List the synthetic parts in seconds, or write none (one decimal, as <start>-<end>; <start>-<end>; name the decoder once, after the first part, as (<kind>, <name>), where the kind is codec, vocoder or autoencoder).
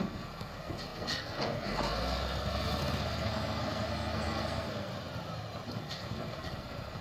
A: 0.0-4.9 (codec, SNAC); 5.7-7.0